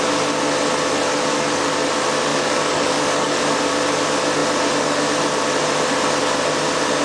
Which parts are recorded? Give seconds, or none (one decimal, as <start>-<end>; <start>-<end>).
0.0-1.1; 1.7-2.3; 3.4-7.0